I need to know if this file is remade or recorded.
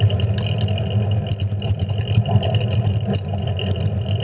recorded